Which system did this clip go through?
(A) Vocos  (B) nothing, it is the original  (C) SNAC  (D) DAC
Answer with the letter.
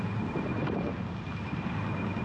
B